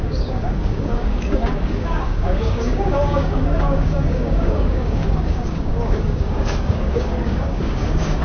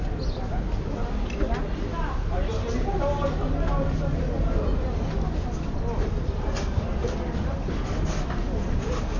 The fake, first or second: first